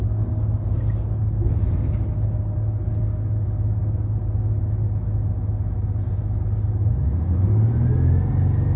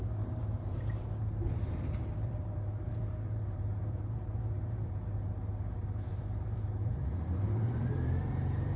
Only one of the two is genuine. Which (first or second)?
first